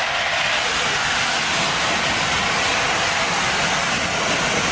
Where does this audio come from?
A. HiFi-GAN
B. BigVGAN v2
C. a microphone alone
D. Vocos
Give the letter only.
C